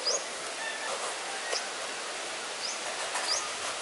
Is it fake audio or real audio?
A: real